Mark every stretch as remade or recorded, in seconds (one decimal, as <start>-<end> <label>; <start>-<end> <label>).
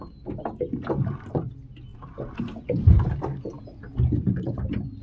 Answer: 0.0-1.9 recorded; 1.9-2.6 remade; 2.6-5.0 recorded